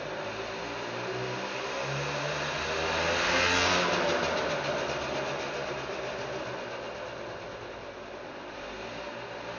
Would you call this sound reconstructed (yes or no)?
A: no